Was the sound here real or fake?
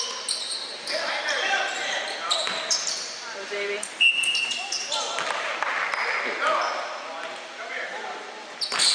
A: fake